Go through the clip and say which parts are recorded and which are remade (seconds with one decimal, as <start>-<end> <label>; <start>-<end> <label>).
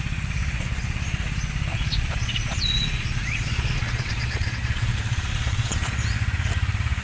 0.0-1.7 recorded; 1.7-5.9 remade; 5.9-7.0 recorded